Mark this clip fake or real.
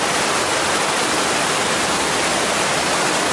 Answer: real